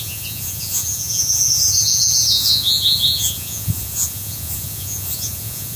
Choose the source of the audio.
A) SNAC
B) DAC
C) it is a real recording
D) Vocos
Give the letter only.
D